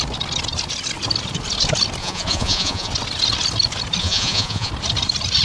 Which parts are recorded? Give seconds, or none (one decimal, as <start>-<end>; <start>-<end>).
0.0-2.0; 2.9-4.0; 4.7-5.4